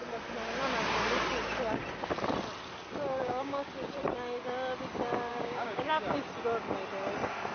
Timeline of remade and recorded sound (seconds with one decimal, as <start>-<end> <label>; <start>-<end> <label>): 0.0-3.2 recorded; 3.2-3.7 remade; 3.7-5.3 recorded; 5.3-6.2 remade; 6.2-7.5 recorded